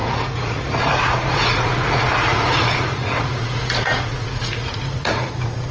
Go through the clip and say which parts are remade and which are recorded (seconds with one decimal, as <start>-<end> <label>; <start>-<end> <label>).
0.0-5.7 remade